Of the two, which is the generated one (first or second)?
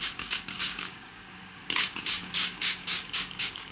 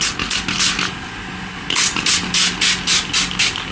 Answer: first